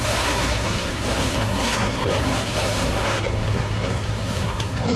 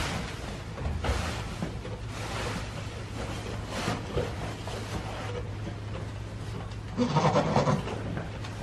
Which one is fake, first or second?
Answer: first